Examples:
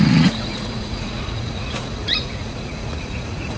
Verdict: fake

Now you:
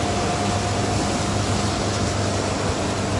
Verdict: real